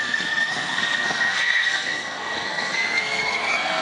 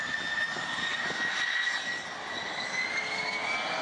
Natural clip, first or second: second